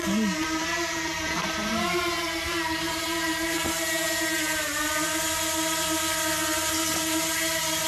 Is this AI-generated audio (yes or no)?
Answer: yes